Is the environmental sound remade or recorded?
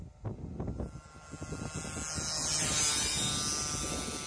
recorded